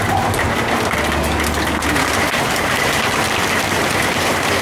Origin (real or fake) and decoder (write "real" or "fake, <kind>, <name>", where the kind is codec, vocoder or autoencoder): real